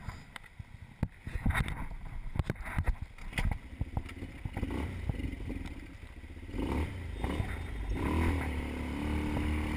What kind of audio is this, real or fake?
real